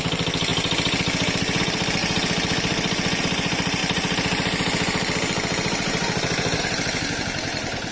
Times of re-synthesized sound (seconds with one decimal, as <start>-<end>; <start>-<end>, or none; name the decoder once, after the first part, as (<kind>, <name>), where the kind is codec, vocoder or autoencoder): none